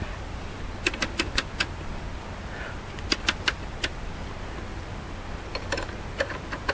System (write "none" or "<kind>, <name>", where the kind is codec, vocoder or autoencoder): none